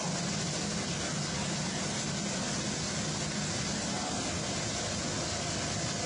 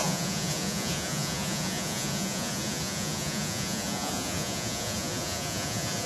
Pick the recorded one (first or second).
first